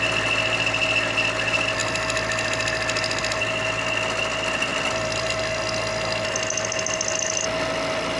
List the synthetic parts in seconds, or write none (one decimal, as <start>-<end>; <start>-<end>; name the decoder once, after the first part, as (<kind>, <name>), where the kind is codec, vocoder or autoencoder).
4.7-5.4 (vocoder, BigVGAN v2)